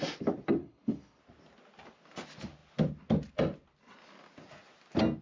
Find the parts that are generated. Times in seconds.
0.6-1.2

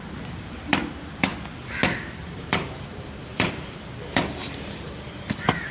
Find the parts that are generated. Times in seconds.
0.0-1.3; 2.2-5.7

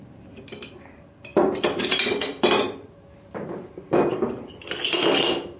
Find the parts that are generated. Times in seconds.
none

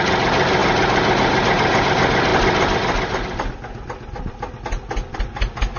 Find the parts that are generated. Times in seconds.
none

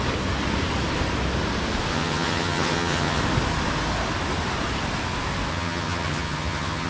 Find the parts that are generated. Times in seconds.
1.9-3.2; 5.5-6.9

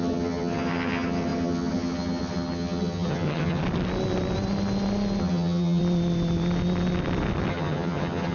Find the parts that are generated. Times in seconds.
0.0-3.6; 5.2-5.8; 7.5-8.3

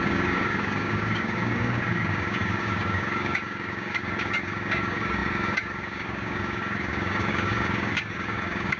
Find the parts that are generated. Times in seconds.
0.0-8.8

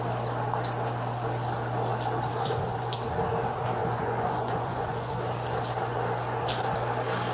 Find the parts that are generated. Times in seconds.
3.8-5.2